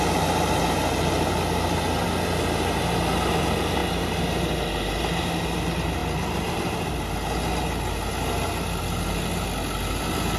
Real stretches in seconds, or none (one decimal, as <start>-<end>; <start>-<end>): 0.0-10.4